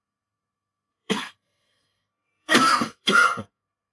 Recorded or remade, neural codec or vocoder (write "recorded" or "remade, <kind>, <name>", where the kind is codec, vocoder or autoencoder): remade, codec, SNAC